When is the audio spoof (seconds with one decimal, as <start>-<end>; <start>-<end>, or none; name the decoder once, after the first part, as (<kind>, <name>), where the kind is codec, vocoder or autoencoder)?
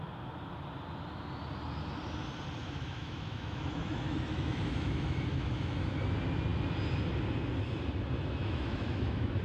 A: 2.6-6.0 (autoencoder, DAC-VAE); 8.4-9.4